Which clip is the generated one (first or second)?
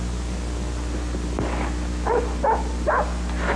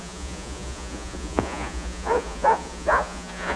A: second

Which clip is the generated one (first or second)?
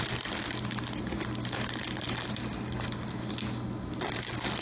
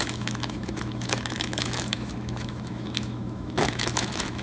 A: second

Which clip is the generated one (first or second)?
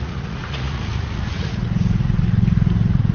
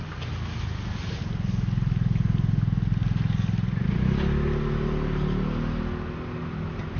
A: first